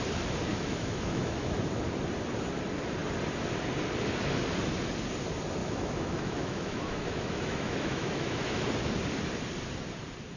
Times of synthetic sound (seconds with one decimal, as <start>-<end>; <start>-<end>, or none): 0.5-1.6; 5.6-8.7